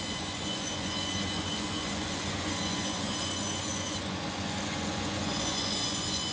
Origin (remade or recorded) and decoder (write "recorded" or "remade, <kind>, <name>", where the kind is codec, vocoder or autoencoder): remade, vocoder, Vocos